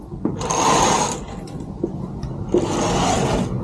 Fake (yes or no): no